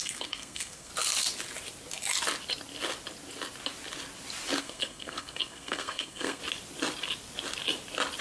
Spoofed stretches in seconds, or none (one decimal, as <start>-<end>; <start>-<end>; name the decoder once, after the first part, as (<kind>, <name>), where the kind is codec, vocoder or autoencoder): 0.0-0.9 (codec, SNAC); 4.6-6.4